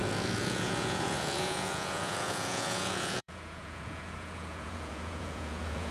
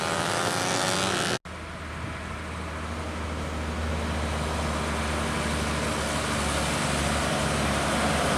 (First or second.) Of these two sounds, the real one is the second